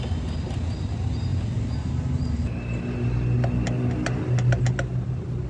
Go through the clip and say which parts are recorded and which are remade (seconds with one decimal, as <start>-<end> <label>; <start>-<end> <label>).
0.0-5.5 recorded